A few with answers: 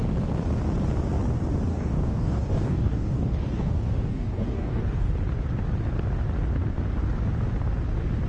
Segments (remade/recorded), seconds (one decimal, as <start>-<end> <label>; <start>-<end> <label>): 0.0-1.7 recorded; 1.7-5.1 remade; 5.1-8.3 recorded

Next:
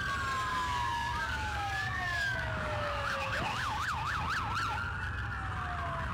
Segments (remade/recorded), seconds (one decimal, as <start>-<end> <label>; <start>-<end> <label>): 0.0-0.5 recorded; 0.5-4.2 remade; 4.2-6.1 recorded

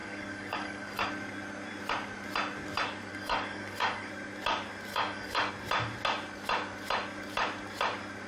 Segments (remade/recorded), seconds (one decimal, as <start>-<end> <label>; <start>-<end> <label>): 0.0-1.1 remade; 1.1-3.1 recorded; 3.1-4.1 remade; 4.1-4.9 recorded; 4.9-5.5 remade; 5.5-8.3 recorded

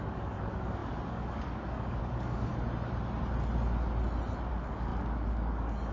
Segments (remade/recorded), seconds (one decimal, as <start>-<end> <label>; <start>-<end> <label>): 0.0-2.5 remade; 2.5-4.5 recorded; 4.5-5.9 remade

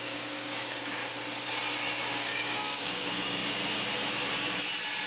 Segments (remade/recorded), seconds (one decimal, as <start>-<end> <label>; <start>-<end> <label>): 0.0-1.0 remade; 1.0-2.0 recorded; 2.0-3.4 remade; 3.4-5.1 recorded

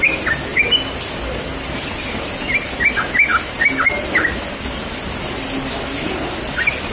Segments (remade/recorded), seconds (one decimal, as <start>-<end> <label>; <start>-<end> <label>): 0.0-6.9 recorded